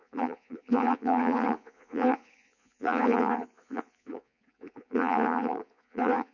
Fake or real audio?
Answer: fake